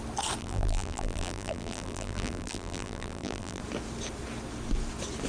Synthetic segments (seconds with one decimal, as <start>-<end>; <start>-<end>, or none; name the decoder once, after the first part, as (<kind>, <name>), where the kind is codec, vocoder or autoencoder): 0.4-3.6 (vocoder, BigVGAN v2)